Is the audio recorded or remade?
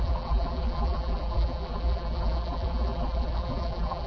remade